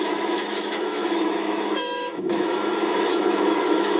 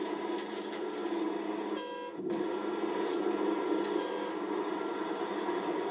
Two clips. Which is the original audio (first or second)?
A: second